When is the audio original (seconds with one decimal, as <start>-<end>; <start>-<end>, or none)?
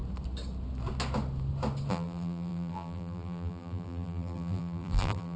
0.0-1.9